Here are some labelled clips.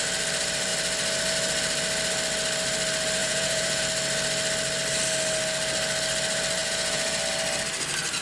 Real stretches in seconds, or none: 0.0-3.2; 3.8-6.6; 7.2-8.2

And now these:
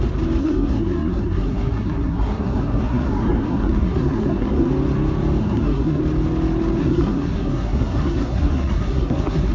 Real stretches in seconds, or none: 0.0-0.4; 4.7-5.4; 6.0-6.8

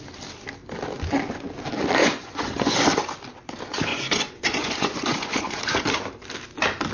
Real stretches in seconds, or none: 0.0-2.0; 2.8-3.9; 5.6-6.9

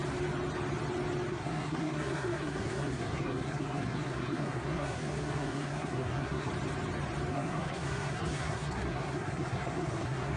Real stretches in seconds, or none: 0.0-1.3; 6.5-7.3

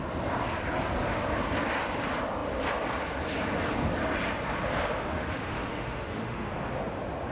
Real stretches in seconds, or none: 0.0-5.1; 6.5-7.3

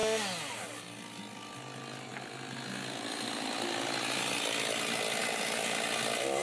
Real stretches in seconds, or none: 0.0-6.4